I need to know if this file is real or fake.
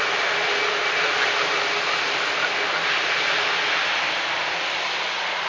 real